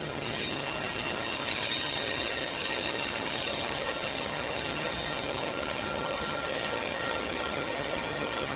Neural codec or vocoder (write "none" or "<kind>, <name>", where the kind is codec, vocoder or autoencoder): vocoder, HiFi-GAN